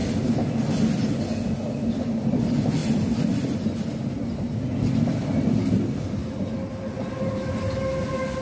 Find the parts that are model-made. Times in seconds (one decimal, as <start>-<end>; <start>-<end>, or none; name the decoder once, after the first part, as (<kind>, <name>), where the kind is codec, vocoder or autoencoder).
none